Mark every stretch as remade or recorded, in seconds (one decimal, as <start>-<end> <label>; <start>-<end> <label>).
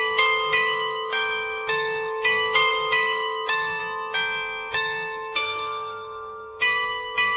0.0-3.8 remade; 3.8-4.7 recorded; 4.7-7.4 remade